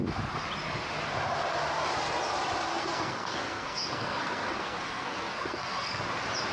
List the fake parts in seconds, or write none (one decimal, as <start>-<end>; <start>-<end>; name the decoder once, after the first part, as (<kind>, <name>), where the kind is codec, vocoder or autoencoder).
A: 2.7-6.0 (codec, SNAC)